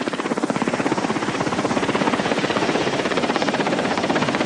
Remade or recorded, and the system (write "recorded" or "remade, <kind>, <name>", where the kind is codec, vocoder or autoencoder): remade, vocoder, Vocos